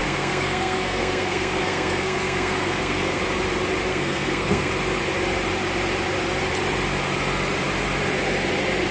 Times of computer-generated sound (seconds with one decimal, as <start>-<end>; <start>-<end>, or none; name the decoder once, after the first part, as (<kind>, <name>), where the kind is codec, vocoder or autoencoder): 0.0-3.2 (codec, SNAC); 3.9-4.7